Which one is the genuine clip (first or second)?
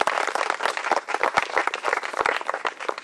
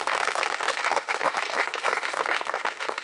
first